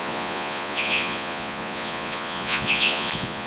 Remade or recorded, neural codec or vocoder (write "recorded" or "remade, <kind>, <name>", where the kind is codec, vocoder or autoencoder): remade, vocoder, Vocos